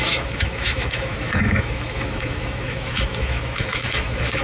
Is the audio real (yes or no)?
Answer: no